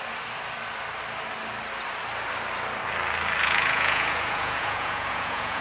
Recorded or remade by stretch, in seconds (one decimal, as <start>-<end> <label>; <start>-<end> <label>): 0.0-3.4 recorded; 3.4-5.6 remade